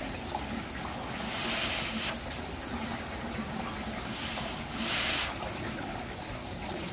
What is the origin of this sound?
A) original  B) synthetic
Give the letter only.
A